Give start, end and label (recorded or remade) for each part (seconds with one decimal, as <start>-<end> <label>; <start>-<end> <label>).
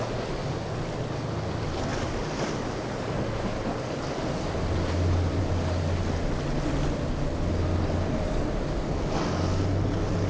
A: 0.0-1.9 recorded; 1.9-5.4 remade; 5.4-10.3 recorded